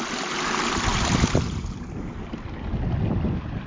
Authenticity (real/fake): real